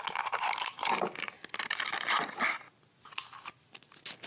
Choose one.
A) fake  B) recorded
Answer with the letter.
B